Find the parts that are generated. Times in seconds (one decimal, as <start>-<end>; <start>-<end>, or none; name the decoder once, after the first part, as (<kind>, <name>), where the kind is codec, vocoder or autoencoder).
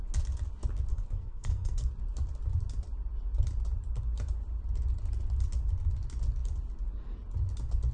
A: 0.9-1.9 (codec, SNAC)